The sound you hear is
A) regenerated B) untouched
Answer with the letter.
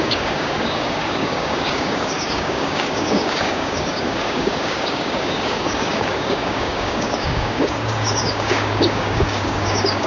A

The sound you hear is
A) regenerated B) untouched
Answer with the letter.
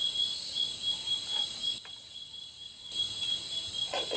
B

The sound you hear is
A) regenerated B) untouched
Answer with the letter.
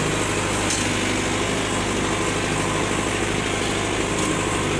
B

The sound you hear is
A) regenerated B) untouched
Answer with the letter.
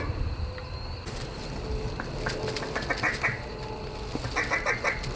B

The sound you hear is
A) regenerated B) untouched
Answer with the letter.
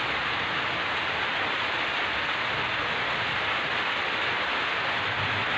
B